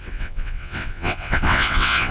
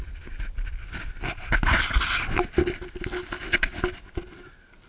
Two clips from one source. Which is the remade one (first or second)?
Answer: first